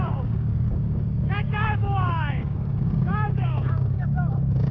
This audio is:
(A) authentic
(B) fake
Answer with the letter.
B